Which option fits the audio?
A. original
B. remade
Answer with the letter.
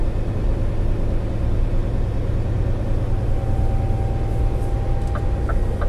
A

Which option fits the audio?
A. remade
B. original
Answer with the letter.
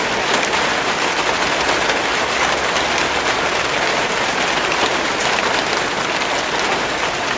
B